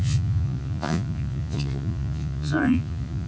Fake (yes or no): yes